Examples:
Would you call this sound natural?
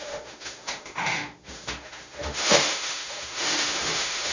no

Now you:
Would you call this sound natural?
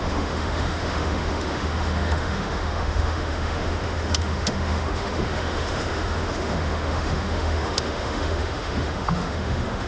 no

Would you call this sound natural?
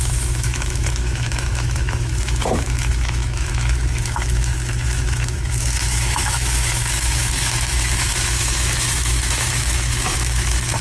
no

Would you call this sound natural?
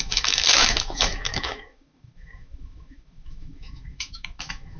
no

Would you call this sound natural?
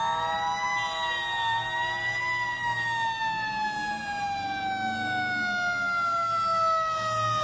yes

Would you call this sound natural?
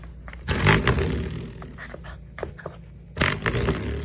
yes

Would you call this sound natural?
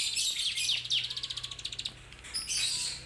yes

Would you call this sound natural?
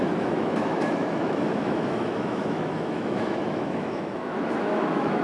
no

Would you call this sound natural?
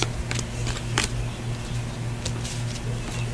yes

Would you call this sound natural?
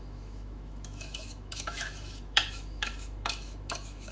no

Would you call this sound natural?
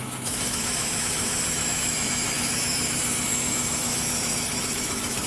no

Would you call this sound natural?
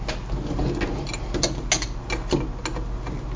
yes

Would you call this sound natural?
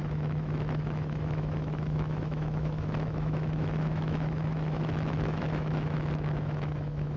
no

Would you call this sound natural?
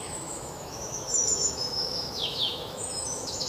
no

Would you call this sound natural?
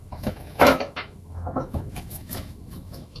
no